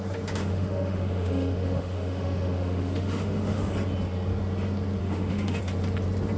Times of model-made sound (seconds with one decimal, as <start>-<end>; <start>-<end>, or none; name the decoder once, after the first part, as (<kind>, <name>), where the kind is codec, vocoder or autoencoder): 0.4-3.7 (autoencoder, DAC-VAE); 5.0-5.6